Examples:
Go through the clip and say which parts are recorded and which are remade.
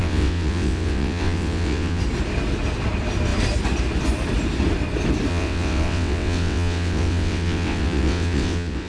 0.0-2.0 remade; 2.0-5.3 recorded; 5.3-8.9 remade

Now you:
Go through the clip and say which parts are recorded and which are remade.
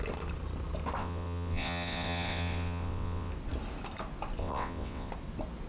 0.0-1.0 recorded; 1.0-3.3 remade; 3.3-4.4 recorded; 4.4-5.1 remade; 5.1-5.7 recorded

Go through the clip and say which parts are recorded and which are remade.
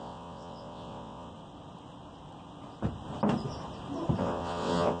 0.0-1.3 remade; 1.3-4.2 recorded; 4.2-5.0 remade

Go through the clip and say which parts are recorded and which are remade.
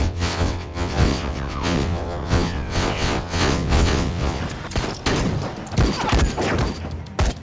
0.0-4.4 remade; 4.4-7.4 recorded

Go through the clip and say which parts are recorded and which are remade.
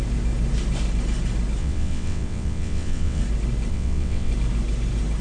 0.0-1.6 recorded; 1.6-3.2 remade; 3.2-3.7 recorded; 3.7-4.3 remade; 4.3-5.2 recorded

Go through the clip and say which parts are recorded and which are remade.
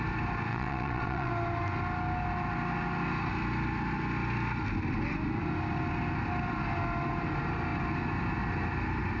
0.0-0.5 recorded; 0.5-1.3 remade; 1.3-9.2 recorded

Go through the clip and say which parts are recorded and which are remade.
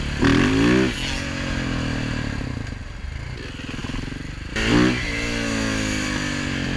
0.0-6.8 recorded